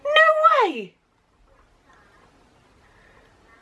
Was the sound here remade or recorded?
recorded